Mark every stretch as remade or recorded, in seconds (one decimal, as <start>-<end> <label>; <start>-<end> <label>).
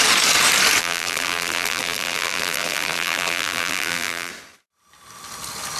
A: 0.0-0.8 recorded; 0.8-4.3 remade; 4.3-5.8 recorded